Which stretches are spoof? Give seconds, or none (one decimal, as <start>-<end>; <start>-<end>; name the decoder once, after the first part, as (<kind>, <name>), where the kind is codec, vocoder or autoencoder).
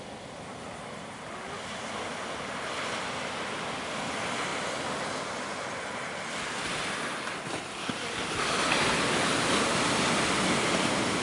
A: none